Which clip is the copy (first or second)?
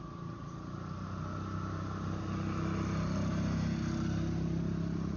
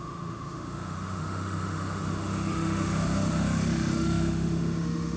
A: second